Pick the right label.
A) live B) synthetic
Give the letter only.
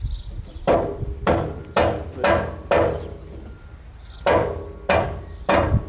A